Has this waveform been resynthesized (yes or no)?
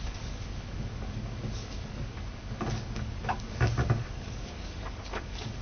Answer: yes